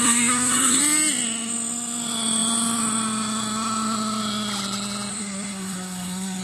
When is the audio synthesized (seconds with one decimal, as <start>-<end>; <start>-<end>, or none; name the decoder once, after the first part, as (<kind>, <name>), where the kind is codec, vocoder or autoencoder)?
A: 0.0-0.8 (codec, SNAC); 5.1-6.4